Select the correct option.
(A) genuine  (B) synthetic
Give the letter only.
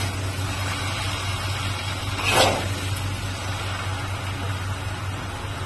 A